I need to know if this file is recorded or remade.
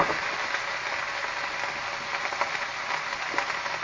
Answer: recorded